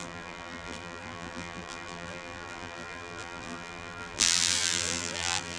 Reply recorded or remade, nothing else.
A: remade